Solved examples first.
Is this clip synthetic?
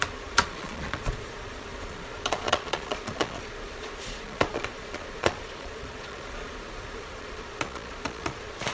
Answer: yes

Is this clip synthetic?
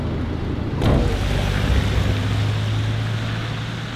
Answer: no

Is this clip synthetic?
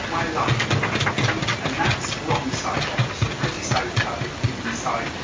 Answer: no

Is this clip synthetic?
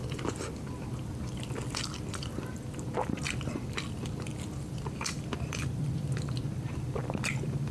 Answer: yes